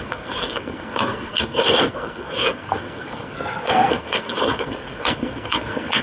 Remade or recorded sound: remade